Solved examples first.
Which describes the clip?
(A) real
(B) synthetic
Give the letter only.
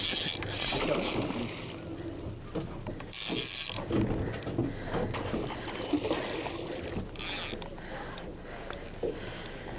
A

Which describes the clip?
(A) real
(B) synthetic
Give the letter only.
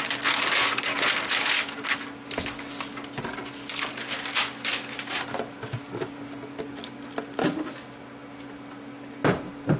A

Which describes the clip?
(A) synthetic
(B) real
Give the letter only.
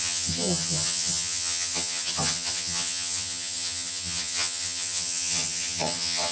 A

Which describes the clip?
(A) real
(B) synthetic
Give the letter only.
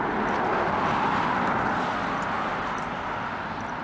A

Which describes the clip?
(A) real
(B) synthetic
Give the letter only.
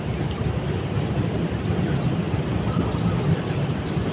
A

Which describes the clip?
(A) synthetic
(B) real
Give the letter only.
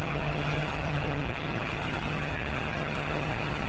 A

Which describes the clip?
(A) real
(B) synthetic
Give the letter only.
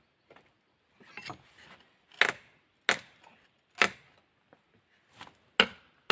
A